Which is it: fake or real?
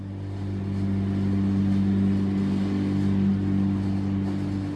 real